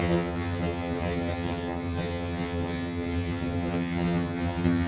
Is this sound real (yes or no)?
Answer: no